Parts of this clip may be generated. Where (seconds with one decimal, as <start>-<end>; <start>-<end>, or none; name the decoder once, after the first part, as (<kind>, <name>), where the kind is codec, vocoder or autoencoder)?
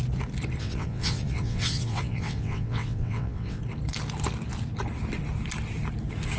0.6-3.6 (vocoder, WaveNeXt)